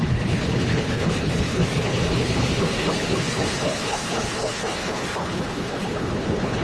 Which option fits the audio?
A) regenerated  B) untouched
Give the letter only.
A